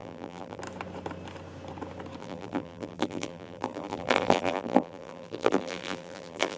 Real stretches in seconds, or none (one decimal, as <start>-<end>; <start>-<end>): 0.6-2.2